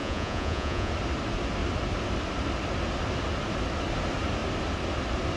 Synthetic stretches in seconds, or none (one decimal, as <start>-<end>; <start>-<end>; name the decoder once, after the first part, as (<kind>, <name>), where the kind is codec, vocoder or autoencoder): 0.0-0.9 (vocoder, Vocos)